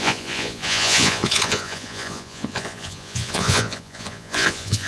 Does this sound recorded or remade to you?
remade